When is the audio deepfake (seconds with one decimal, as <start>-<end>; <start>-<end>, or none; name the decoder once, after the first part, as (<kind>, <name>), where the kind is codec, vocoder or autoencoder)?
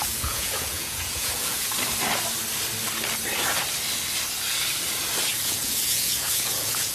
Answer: 0.0-1.7 (vocoder, Vocos); 5.4-6.9